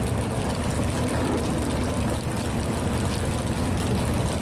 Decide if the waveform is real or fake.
real